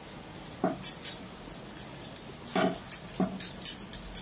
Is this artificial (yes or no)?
no